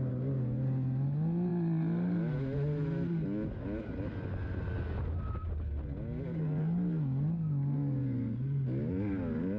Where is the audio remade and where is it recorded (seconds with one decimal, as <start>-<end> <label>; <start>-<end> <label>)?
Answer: 0.0-9.6 recorded